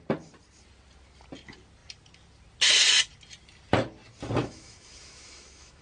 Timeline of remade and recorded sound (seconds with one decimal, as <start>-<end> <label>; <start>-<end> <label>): 0.0-4.4 recorded; 4.4-5.8 remade